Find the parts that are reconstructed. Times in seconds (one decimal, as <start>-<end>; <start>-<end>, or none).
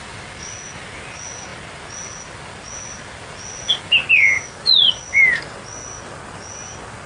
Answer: none